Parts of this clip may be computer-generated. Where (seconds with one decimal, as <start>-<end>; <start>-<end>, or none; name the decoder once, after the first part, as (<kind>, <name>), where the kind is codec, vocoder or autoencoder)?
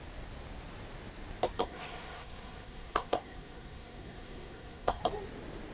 1.6-5.0 (codec, SNAC)